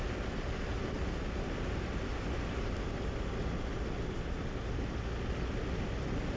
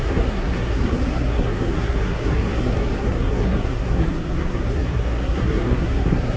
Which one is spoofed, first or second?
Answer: second